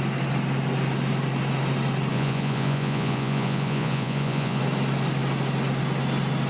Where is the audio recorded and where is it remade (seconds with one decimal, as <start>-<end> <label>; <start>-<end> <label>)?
0.0-2.1 recorded; 2.1-4.6 remade; 4.6-6.5 recorded